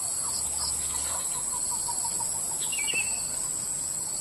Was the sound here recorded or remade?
recorded